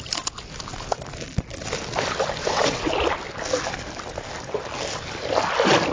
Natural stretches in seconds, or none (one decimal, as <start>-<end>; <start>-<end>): 0.0-2.4; 2.9-5.9